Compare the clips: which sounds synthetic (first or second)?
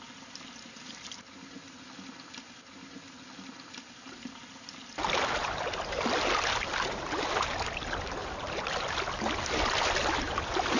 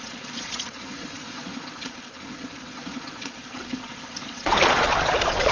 second